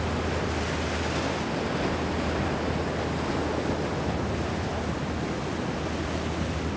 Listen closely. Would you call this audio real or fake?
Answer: real